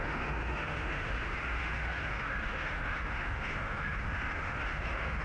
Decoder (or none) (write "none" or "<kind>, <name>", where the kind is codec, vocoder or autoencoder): autoencoder, DAC-VAE